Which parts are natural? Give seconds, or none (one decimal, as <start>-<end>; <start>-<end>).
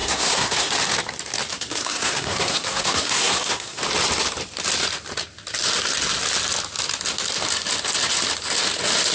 0.7-1.5; 3.8-9.1